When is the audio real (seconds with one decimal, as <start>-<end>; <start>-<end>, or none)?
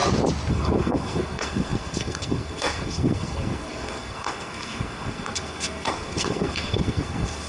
0.0-0.5